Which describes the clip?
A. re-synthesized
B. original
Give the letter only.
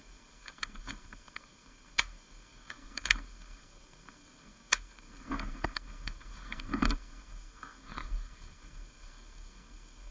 A